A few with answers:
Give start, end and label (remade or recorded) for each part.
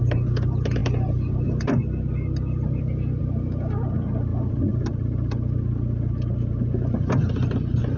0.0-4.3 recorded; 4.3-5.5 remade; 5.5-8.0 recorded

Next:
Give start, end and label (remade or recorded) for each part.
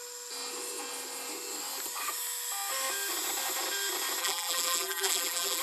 0.0-4.2 recorded; 4.2-5.6 remade